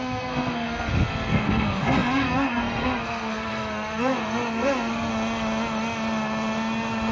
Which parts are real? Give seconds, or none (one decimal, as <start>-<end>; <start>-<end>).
5.1-7.1